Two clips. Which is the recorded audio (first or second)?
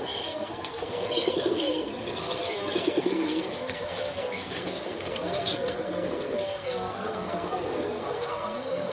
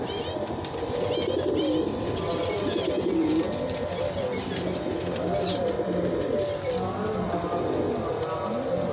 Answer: second